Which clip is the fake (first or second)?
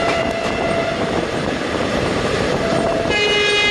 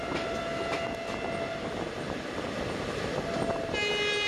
first